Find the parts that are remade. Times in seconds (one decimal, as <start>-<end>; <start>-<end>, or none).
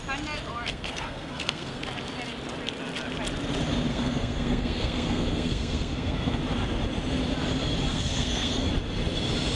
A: 0.7-1.8; 3.9-6.4; 7.9-8.7